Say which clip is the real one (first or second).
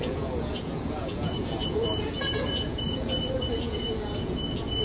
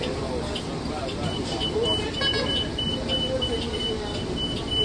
second